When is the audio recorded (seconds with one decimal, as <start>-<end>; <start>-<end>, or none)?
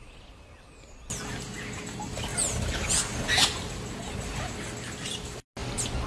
0.0-6.1